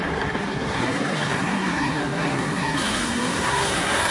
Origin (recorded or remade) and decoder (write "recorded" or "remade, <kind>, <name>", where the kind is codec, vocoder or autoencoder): remade, codec, SNAC